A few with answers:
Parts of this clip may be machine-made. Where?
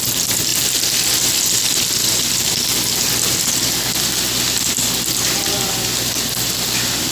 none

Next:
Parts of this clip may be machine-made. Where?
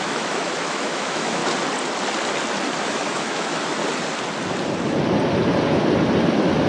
0.0-1.4 (autoencoder, DAC-VAE); 2.8-3.8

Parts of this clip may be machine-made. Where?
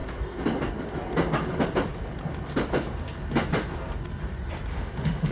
4.7-5.3 (autoencoder, DAC-VAE)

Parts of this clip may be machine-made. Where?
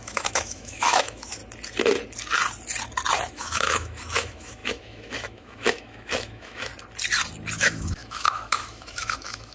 0.0-1.4 (autoencoder, DAC-VAE); 3.3-6.7; 7.6-9.5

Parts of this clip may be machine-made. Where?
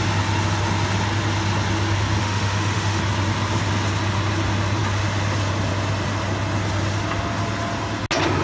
2.2-3.0 (autoencoder, DAC-VAE)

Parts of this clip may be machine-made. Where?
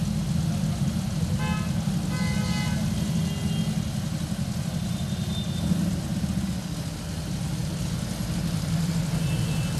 none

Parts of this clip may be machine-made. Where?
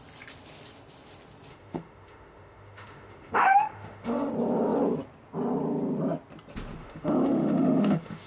1.5-4.3 (autoencoder, DAC-VAE); 6.8-8.3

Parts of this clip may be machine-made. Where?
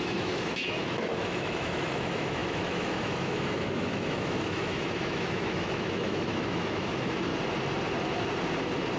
0.0-7.3 (autoencoder, DAC-VAE)